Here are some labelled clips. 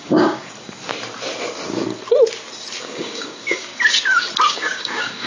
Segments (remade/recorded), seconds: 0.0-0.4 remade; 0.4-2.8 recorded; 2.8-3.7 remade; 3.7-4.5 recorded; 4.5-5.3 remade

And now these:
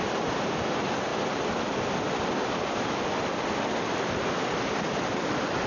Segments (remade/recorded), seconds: 0.0-5.7 recorded

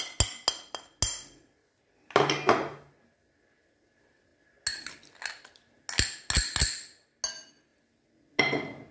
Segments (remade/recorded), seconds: 0.0-8.9 recorded

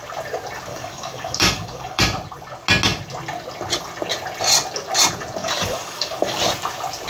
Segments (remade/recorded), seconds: 0.0-0.7 recorded; 0.7-2.0 remade; 2.0-5.4 recorded; 5.4-6.4 remade; 6.4-7.1 recorded

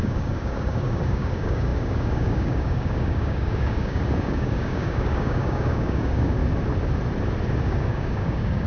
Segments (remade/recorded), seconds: 0.0-6.4 remade; 6.4-7.6 recorded; 7.6-8.7 remade

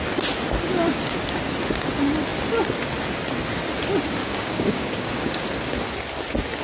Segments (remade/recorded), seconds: 0.0-4.2 recorded; 4.2-5.4 remade; 5.4-6.6 recorded